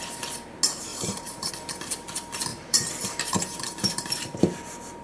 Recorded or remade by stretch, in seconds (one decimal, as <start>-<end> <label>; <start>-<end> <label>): 0.0-0.9 recorded; 0.9-1.5 remade; 1.5-2.5 recorded; 2.5-4.4 remade; 4.4-5.0 recorded